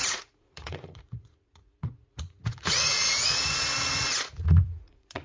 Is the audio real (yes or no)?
no